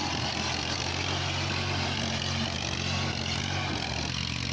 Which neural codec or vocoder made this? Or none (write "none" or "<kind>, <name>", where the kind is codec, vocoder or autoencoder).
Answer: none